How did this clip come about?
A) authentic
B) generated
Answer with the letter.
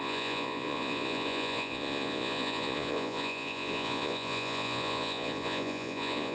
B